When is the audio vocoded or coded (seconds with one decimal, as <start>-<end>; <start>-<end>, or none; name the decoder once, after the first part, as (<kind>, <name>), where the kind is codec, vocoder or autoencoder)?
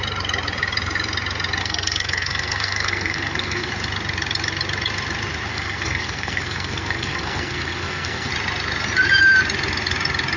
1.6-3.7 (codec, SNAC); 5.5-8.3